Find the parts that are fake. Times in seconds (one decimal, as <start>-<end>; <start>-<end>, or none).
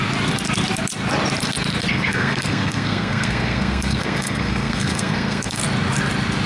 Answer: 1.9-5.6